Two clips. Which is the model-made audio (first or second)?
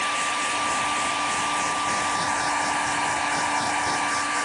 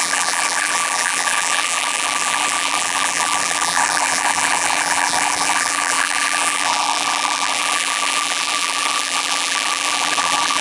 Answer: second